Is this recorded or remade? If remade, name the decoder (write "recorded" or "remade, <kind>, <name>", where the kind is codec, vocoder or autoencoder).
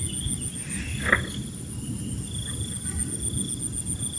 recorded